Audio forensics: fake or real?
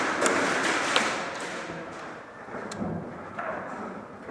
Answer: real